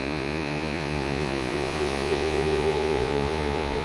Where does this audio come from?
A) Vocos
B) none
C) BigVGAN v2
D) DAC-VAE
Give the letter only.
A